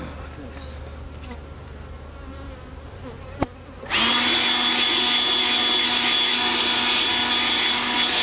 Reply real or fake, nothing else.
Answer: real